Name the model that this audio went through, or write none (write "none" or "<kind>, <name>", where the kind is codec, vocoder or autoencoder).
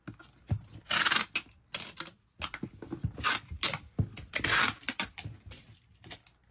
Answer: none